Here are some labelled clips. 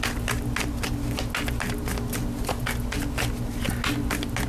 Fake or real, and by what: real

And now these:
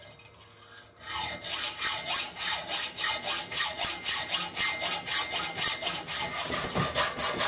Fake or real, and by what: real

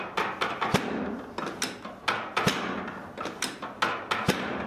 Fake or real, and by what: real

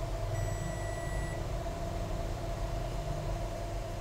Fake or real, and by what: real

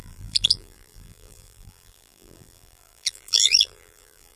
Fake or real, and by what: fake, vocoder, BigVGAN v2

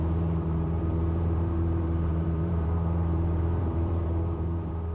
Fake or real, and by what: fake, vocoder, BigVGAN v2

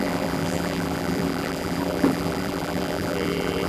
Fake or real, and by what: fake, vocoder, BigVGAN v2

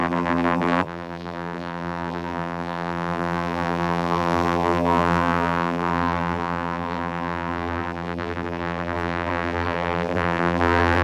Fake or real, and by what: fake, vocoder, BigVGAN v2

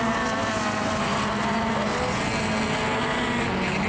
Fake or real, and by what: real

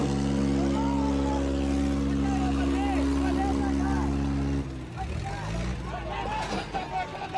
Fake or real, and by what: real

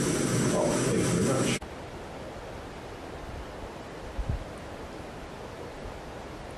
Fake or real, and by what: real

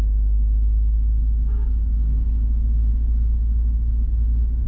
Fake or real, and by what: real